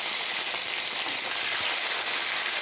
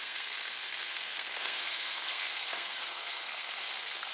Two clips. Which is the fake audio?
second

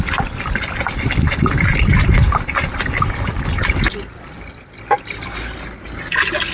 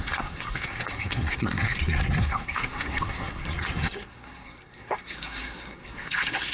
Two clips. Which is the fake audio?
second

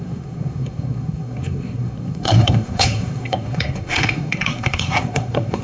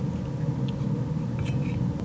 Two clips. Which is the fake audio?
first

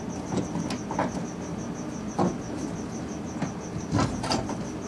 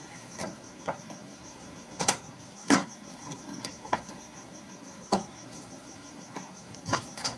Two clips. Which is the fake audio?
second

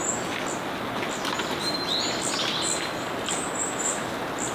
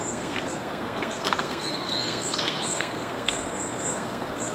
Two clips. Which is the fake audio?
second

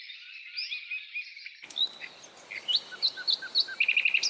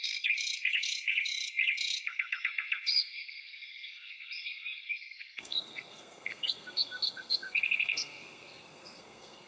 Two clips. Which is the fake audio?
second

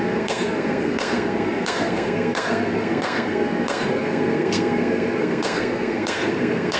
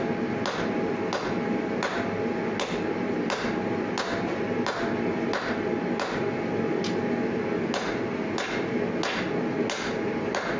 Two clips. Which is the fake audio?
first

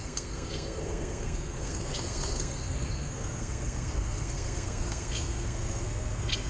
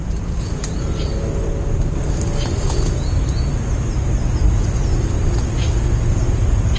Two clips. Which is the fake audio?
first